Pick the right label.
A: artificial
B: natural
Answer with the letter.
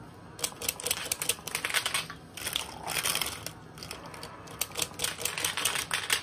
B